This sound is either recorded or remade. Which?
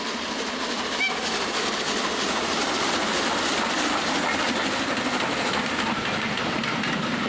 recorded